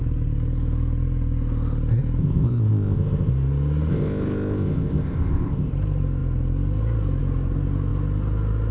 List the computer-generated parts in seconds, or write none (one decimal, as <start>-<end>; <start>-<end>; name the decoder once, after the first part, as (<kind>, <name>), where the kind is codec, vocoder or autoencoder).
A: 2.2-3.3 (codec, ZipCodec); 3.9-5.7